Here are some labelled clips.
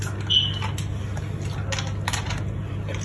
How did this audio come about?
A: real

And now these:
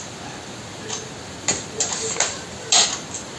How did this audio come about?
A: real